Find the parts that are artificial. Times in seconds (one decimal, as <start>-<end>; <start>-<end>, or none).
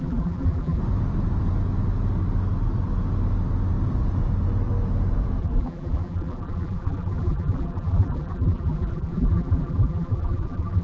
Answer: 0.0-0.8; 5.4-10.8